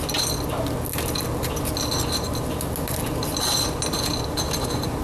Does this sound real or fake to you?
real